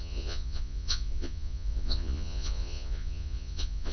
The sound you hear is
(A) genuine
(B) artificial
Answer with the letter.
B